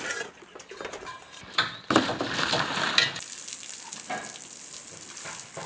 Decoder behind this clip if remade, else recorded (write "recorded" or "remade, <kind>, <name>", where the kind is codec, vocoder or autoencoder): recorded